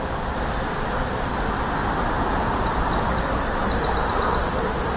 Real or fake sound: real